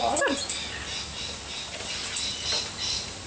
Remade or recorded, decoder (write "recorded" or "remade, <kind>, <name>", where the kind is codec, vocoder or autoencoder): remade, vocoder, BigVGAN v2